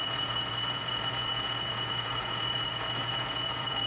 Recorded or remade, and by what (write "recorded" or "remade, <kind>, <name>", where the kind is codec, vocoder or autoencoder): remade, vocoder, Vocos